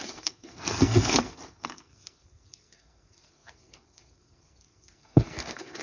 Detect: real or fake fake